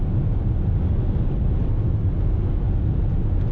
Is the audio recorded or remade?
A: recorded